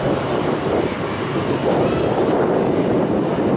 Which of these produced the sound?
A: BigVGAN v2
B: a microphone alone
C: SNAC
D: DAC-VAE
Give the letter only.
B